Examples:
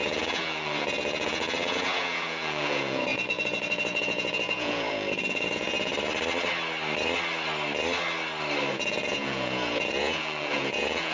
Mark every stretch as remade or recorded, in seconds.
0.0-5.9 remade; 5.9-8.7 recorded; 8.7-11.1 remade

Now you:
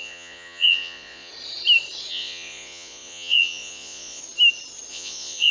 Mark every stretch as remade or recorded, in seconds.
0.0-1.3 remade; 1.3-2.1 recorded; 2.1-4.2 remade; 4.2-4.9 recorded; 4.9-5.5 remade

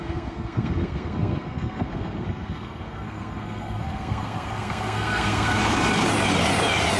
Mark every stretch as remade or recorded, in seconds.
0.0-5.6 remade; 5.6-7.0 recorded

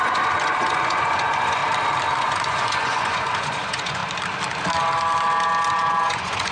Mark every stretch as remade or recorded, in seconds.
0.0-1.6 remade; 1.6-2.2 recorded; 2.2-4.0 remade; 4.0-5.7 recorded; 5.7-6.5 remade